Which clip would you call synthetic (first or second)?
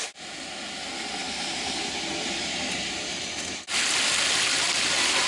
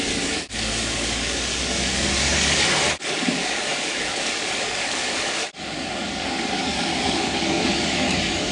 second